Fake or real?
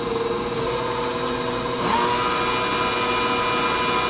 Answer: real